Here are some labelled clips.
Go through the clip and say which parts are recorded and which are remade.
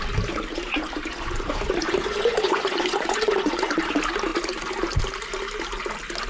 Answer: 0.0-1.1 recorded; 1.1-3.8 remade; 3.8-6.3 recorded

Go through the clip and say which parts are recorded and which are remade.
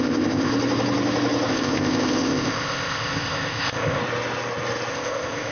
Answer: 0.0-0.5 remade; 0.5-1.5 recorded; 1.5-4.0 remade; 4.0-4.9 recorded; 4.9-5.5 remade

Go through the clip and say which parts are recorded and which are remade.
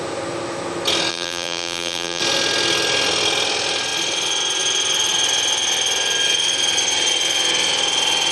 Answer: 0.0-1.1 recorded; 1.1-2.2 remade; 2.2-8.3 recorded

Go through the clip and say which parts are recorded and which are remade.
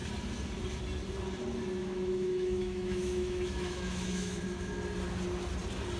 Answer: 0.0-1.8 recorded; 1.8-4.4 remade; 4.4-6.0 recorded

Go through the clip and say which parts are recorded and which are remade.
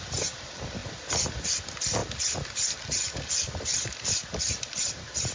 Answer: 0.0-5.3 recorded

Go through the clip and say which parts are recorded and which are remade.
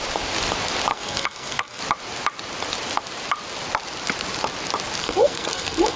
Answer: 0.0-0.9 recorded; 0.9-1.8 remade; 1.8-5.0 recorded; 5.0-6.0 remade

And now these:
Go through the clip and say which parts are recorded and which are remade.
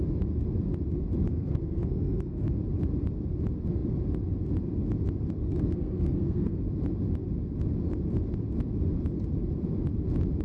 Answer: 0.0-1.3 recorded; 1.3-2.5 remade; 2.5-5.4 recorded; 5.4-6.6 remade; 6.6-10.4 recorded